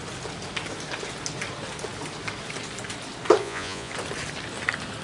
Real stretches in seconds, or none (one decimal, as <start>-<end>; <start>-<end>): 0.0-3.4; 3.9-5.0

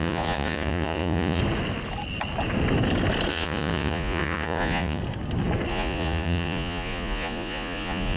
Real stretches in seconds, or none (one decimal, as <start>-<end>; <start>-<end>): 1.4-3.3; 5.0-5.7